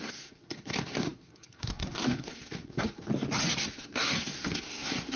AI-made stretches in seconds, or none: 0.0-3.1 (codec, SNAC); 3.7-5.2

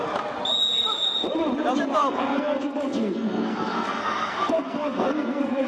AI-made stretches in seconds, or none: 2.0-5.7 (codec, SNAC)

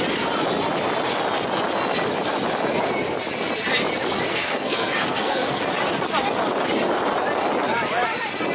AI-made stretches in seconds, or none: 4.3-5.6 (codec, SNAC)

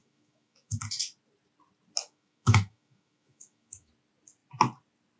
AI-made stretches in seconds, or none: 0.0-0.8 (autoencoder, DAC-VAE); 2.0-3.9

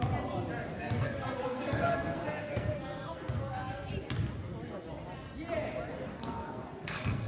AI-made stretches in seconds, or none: 0.7-3.9 (codec, SNAC); 6.1-7.3

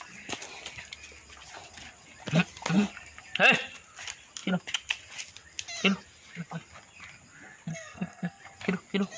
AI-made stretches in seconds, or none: 7.7-8.4 (codec, SNAC)

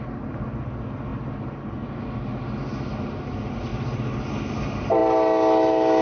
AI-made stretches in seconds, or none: none